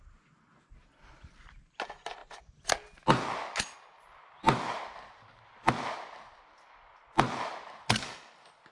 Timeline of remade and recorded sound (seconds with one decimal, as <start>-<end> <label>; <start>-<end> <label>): 0.0-8.7 recorded